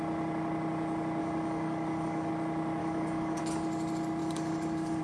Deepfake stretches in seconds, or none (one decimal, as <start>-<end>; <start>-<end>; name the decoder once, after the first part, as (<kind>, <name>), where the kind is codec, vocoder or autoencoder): 1.2-2.3 (codec, DAC); 2.8-3.4; 4.2-5.0